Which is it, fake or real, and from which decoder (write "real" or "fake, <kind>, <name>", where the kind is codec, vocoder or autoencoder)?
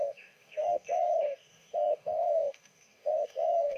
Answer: fake, codec, DAC